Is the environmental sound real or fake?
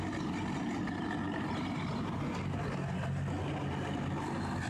real